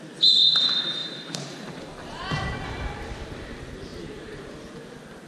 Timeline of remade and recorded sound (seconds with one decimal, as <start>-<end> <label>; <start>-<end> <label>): 0.0-1.0 recorded; 1.0-2.4 remade; 2.4-3.9 recorded; 3.9-4.5 remade; 4.5-5.3 recorded